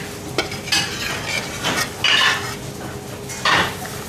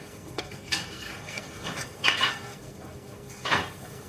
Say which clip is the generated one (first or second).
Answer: second